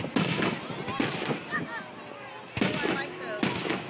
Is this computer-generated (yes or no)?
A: no